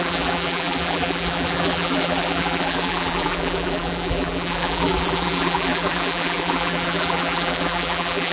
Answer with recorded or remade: remade